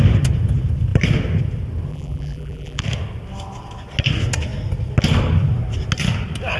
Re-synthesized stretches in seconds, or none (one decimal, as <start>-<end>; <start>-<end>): 1.9-2.8